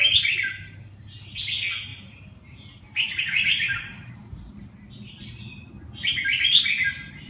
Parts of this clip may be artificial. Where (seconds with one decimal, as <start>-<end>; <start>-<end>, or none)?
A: 1.9-4.4

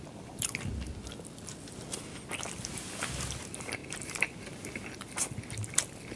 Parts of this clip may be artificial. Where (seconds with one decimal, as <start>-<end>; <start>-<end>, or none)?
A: 0.0-0.7; 3.0-3.8

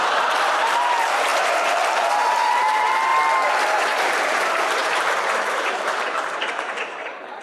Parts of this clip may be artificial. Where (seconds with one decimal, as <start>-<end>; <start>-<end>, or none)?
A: 0.0-3.1; 3.8-7.4

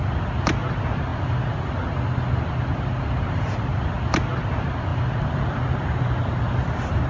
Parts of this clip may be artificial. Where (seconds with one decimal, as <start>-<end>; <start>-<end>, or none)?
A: none

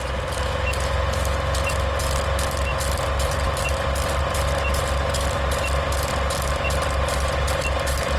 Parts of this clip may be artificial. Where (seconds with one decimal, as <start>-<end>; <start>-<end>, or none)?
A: 2.7-4.2